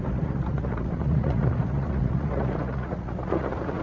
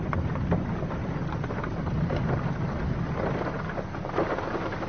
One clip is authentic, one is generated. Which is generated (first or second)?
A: first